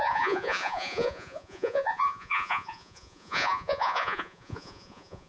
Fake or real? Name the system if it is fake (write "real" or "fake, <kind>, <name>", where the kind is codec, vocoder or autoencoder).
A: fake, vocoder, Vocos